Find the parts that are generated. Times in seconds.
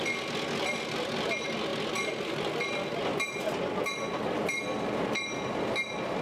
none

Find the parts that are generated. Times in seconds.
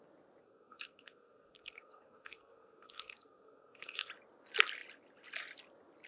0.4-4.1 (codec, SNAC)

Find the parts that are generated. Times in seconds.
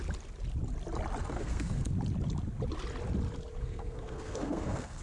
1.2-1.9 (codec, SNAC); 3.6-5.0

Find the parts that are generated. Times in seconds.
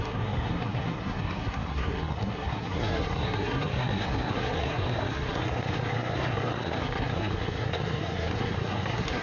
0.0-9.2 (codec, SNAC)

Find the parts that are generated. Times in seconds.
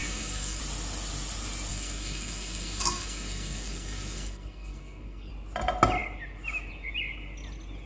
0.0-0.6 (codec, SNAC); 1.7-5.3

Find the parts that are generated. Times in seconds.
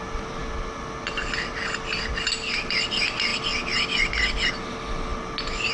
none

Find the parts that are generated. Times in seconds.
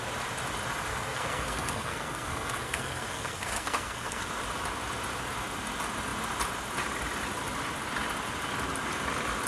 0.9-4.3 (codec, SNAC)